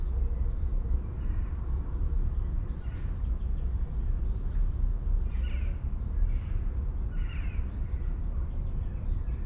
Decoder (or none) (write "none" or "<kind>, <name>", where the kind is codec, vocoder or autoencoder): none